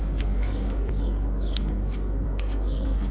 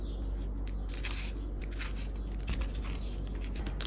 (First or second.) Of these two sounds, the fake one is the first